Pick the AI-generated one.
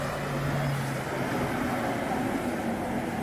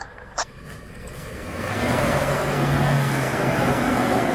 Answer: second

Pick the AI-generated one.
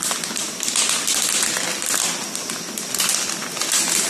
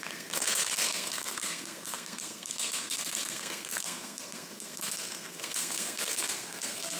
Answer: second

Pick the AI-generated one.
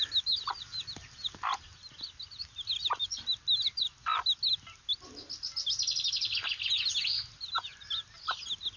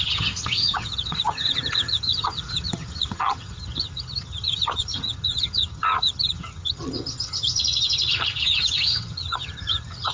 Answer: second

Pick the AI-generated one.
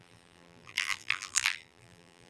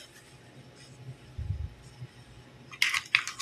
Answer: first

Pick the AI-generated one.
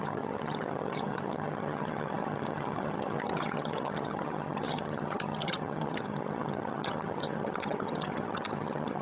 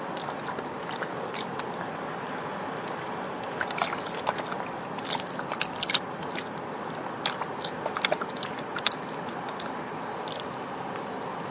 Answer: first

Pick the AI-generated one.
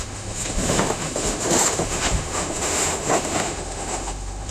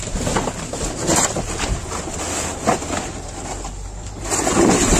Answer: first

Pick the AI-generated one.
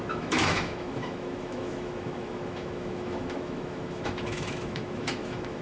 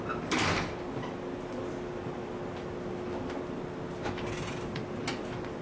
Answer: first